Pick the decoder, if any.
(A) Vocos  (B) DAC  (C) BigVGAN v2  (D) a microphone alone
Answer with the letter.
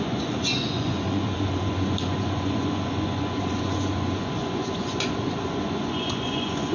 A